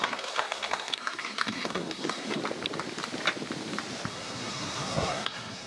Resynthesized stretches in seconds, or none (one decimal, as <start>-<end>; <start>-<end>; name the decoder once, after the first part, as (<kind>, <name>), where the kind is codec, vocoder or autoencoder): 0.0-2.4 (codec, SNAC); 4.1-5.7